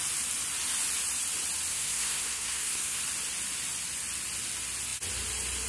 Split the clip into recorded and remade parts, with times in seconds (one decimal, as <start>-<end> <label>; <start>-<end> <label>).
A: 0.0-1.7 recorded; 1.7-3.0 remade; 3.0-5.7 recorded